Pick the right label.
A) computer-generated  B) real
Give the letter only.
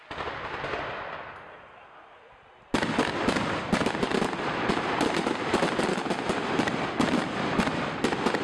B